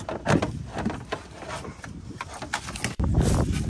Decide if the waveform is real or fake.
real